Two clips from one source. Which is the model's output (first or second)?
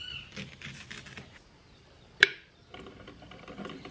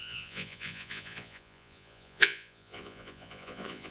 second